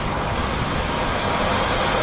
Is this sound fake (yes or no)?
no